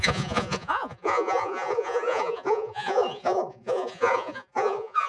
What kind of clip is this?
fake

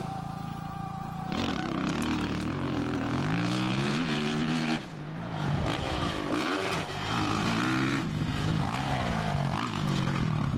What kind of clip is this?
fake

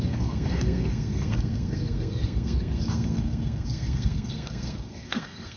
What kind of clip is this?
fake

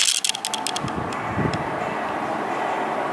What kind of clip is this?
real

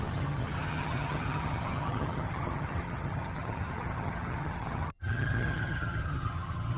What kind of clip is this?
fake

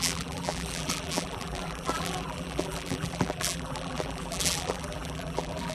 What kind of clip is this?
fake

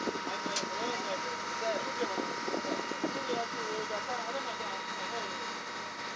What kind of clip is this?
real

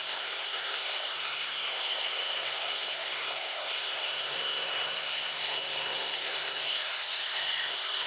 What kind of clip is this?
fake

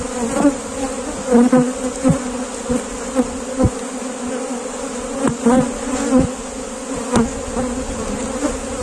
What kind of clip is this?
real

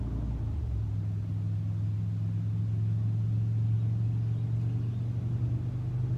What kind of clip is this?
real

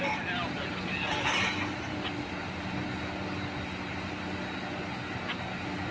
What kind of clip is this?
real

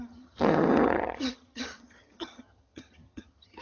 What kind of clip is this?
fake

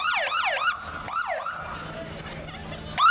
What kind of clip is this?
real